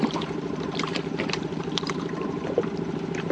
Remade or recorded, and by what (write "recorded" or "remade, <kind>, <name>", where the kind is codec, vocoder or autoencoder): remade, vocoder, BigVGAN v2